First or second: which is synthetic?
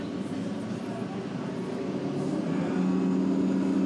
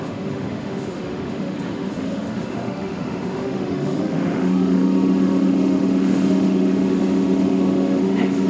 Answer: second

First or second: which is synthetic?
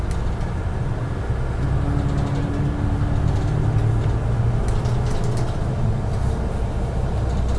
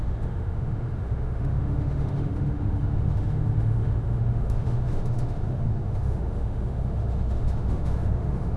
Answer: second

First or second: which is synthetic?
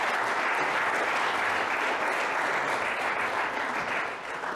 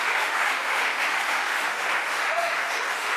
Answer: second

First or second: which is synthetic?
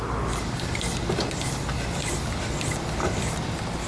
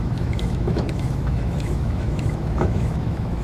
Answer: second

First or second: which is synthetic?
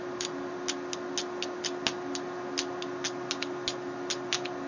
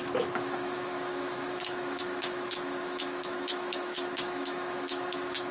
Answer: second